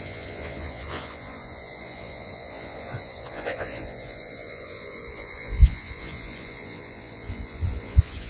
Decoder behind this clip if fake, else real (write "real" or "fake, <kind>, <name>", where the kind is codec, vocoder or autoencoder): fake, vocoder, Vocos